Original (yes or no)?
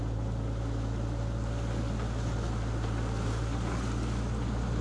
yes